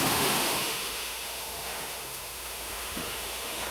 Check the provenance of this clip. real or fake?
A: fake